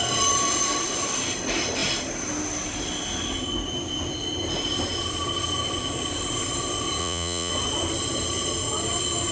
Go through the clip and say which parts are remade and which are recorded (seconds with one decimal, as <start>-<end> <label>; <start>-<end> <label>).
0.0-7.0 recorded; 7.0-7.5 remade; 7.5-9.3 recorded